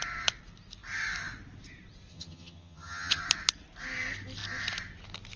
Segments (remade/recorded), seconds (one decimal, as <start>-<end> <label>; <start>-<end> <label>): 0.0-2.1 recorded; 2.1-3.2 remade; 3.2-5.4 recorded